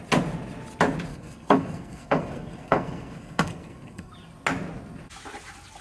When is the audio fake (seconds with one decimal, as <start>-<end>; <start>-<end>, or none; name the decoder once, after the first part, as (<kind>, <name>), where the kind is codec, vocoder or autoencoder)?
1.1-4.1 (codec, SNAC)